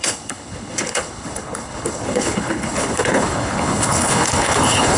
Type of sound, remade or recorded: remade